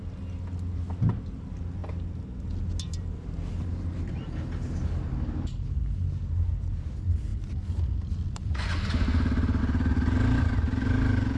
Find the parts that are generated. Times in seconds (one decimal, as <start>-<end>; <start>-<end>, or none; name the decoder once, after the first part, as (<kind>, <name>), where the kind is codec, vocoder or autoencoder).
none